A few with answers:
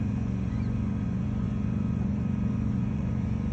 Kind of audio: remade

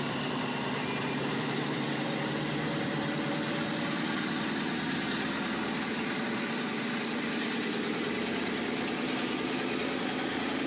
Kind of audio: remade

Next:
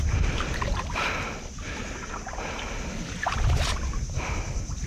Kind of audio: recorded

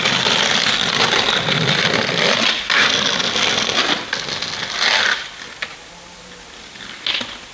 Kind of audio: recorded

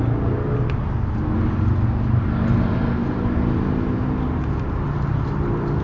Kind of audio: recorded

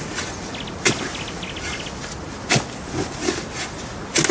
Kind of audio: recorded